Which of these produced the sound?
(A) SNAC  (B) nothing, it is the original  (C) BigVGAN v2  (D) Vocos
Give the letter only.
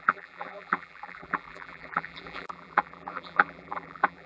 C